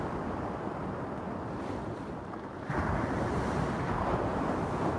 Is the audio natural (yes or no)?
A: no